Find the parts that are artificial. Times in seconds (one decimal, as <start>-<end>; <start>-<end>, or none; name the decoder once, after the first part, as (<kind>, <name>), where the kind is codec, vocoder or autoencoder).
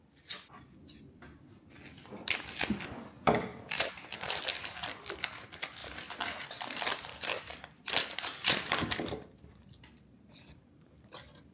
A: 3.5-4.4 (vocoder, BigVGAN v2); 5.8-10.9